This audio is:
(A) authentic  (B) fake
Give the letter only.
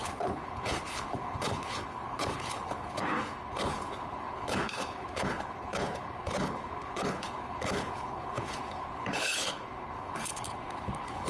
B